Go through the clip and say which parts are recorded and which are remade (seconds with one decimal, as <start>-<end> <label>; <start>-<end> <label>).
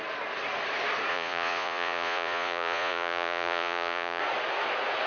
0.0-1.1 recorded; 1.1-4.2 remade; 4.2-5.1 recorded